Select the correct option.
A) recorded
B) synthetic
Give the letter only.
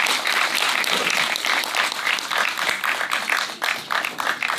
A